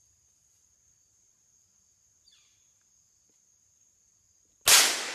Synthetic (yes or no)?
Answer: no